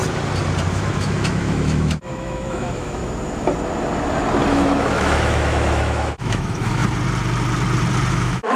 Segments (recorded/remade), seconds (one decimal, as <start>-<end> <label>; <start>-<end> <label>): 0.0-0.7 recorded; 0.7-3.0 remade; 3.0-4.5 recorded; 4.5-6.8 remade; 6.8-8.1 recorded; 8.1-8.6 remade